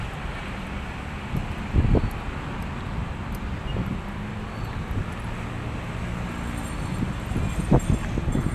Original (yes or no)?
yes